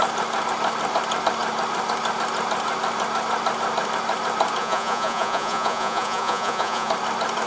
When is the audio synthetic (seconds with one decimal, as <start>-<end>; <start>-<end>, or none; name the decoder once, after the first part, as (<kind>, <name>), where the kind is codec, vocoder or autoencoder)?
4.6-6.9 (vocoder, Vocos)